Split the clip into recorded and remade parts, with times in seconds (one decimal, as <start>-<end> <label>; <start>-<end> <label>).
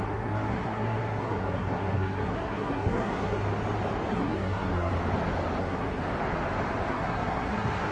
0.0-3.4 remade; 3.4-4.1 recorded; 4.1-4.9 remade; 4.9-5.6 recorded; 5.6-6.1 remade; 6.1-6.9 recorded; 6.9-7.9 remade